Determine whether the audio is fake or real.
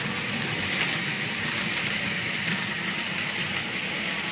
real